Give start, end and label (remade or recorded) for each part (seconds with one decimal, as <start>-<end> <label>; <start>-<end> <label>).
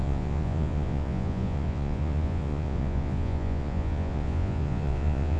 0.0-5.4 remade